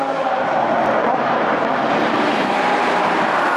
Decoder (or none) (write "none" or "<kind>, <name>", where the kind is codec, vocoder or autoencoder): vocoder, BigVGAN v2